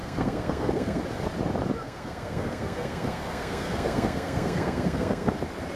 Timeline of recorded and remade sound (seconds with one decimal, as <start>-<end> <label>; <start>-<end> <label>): 0.0-1.0 remade; 1.0-1.8 recorded; 1.8-5.3 remade; 5.3-5.8 recorded